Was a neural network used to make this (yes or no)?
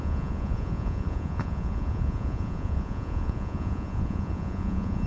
yes